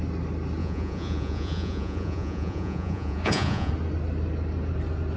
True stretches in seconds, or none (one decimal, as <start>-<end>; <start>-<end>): 0.0-0.6; 3.7-5.2